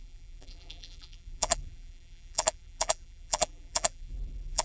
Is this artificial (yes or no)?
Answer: yes